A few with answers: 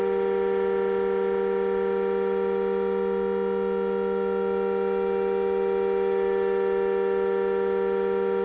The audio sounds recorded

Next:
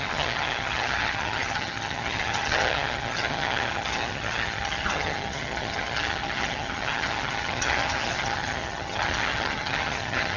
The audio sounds remade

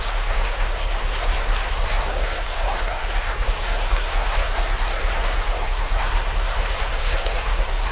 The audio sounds remade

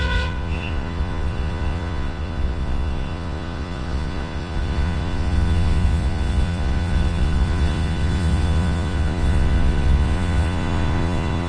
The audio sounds remade